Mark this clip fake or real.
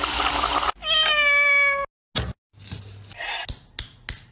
real